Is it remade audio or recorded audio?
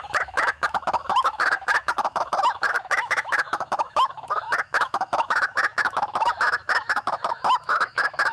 remade